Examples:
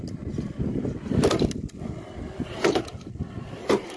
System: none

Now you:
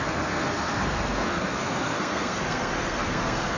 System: codec, SNAC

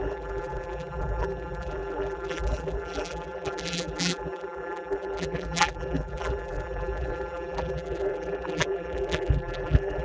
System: vocoder, BigVGAN v2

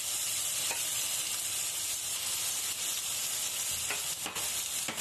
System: none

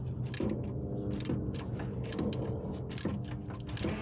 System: none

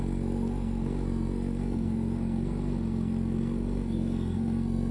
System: codec, SNAC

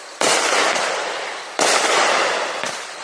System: vocoder, BigVGAN v2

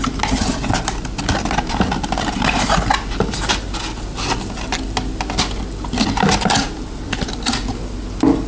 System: none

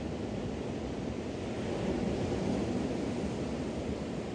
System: none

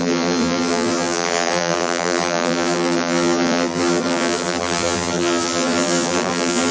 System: vocoder, BigVGAN v2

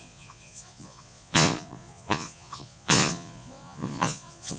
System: vocoder, Vocos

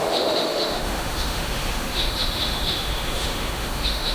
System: autoencoder, DAC-VAE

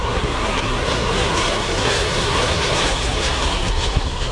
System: codec, SNAC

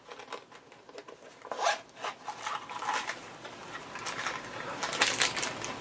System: none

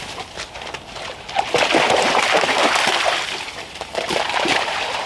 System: none